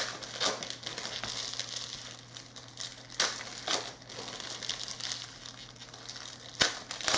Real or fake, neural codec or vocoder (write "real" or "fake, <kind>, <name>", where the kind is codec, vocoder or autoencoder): real